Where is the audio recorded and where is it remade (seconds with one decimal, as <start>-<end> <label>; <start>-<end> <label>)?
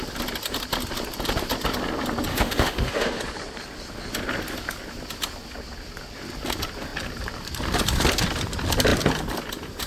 0.0-2.3 recorded; 2.3-3.2 remade; 3.2-9.9 recorded